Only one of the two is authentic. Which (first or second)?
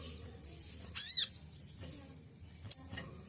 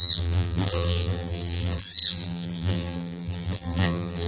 first